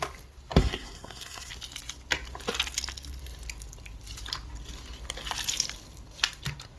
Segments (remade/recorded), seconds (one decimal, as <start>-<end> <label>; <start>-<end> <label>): 0.0-0.6 recorded; 0.6-1.5 remade; 1.5-6.8 recorded